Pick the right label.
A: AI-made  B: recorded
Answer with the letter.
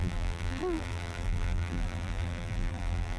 A